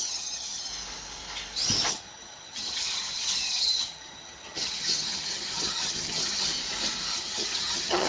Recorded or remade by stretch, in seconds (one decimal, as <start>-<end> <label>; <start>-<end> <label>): 0.0-0.7 remade; 0.7-1.9 recorded; 1.9-6.5 remade; 6.5-7.1 recorded; 7.1-8.1 remade

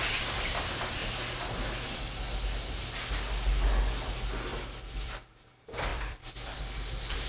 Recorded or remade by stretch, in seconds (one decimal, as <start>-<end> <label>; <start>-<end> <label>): 0.0-1.0 remade; 1.0-4.9 recorded; 4.9-7.3 remade

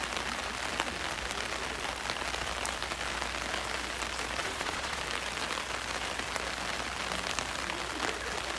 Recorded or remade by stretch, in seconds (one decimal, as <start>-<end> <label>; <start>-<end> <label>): 0.0-4.4 recorded; 4.4-5.0 remade; 5.0-8.6 recorded

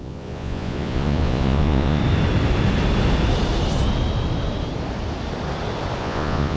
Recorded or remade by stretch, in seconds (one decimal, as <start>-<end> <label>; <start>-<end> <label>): 0.0-2.0 remade; 2.0-6.0 recorded; 6.0-6.6 remade

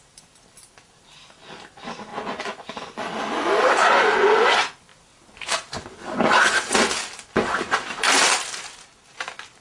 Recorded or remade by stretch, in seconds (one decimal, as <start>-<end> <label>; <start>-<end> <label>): 0.0-2.1 recorded; 2.1-3.0 remade; 3.0-3.8 recorded; 3.8-4.5 remade; 4.5-9.6 recorded

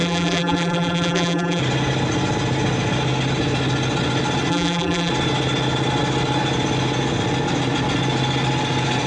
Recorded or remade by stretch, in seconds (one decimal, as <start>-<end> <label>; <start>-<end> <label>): 0.0-1.6 remade; 1.6-4.5 recorded; 4.5-5.1 remade; 5.1-9.1 recorded